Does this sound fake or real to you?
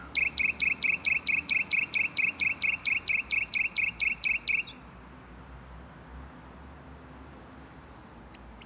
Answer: real